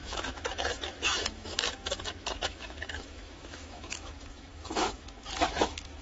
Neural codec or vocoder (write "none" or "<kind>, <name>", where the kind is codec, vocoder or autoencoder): autoencoder, DAC-VAE